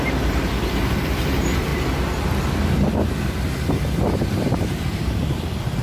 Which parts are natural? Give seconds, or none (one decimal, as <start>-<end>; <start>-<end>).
1.7-4.1